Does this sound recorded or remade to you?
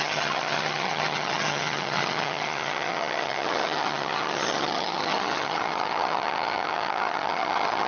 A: remade